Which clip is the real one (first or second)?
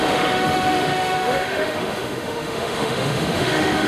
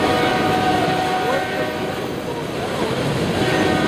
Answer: second